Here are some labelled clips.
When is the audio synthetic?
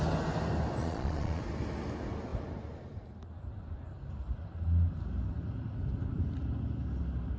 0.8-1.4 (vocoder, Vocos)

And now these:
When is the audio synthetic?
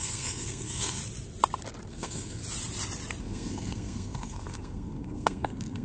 0.0-1.0 (codec, SNAC); 1.9-2.4; 3.2-5.8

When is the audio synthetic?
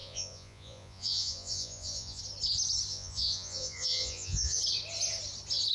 0.0-2.2 (vocoder, Vocos); 2.9-4.6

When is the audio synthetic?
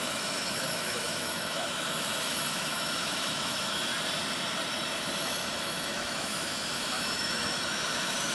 0.0-3.9 (autoencoder, DAC-VAE); 5.2-8.3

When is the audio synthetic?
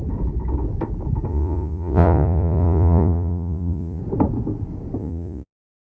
1.3-4.0 (vocoder, Vocos); 5.0-6.0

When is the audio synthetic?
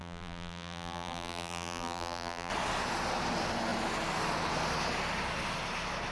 0.0-2.5 (vocoder, BigVGAN v2)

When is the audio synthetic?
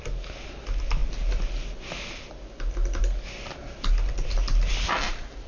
none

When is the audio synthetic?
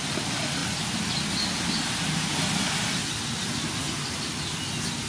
none